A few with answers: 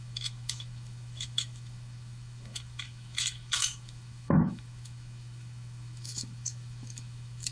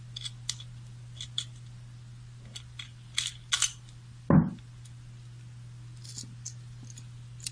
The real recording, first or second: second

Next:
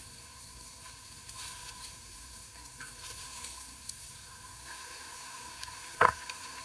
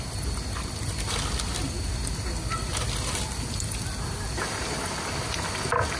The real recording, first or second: second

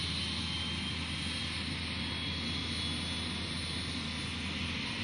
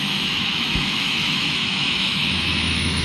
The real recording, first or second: first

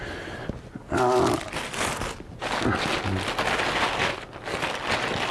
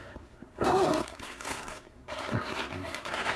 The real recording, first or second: first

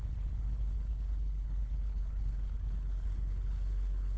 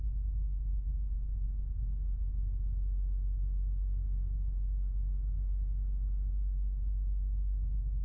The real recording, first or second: second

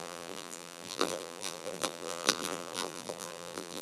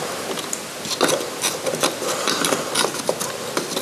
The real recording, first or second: second